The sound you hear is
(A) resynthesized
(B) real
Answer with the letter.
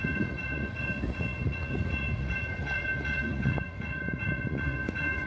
A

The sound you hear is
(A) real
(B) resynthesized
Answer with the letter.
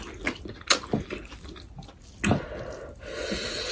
A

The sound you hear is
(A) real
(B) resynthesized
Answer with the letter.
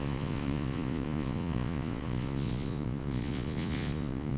B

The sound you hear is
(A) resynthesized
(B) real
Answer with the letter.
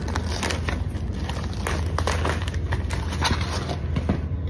B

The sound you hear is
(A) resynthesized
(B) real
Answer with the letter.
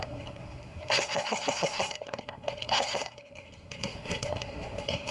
A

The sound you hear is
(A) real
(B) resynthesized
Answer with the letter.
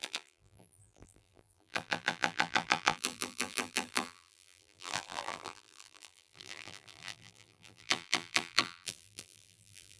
B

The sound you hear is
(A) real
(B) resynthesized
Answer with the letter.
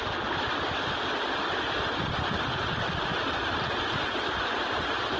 A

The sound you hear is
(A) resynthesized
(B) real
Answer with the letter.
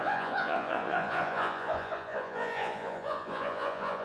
A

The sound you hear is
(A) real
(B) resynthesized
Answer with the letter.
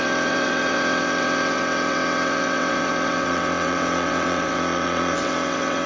B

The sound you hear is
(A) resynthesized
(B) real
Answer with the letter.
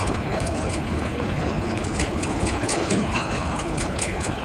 A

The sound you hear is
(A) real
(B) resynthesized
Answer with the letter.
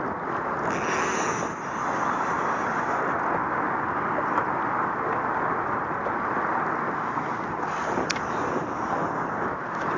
A